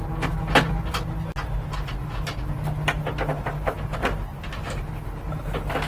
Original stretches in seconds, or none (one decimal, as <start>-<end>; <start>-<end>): 0.0-3.3; 4.9-5.9